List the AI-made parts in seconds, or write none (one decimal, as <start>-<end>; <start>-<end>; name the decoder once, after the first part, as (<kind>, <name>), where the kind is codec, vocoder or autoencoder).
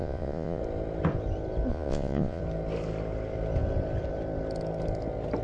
0.0-0.6 (vocoder, Vocos); 1.7-2.4